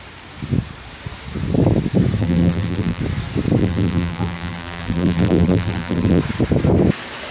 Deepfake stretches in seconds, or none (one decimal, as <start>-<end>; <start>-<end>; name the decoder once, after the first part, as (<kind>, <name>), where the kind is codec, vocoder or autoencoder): 2.2-3.0 (vocoder, BigVGAN v2); 3.6-6.2